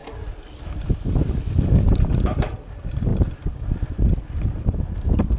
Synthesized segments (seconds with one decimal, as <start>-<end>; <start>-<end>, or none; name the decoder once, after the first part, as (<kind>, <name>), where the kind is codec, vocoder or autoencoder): none